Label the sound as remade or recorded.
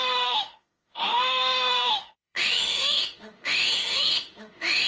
remade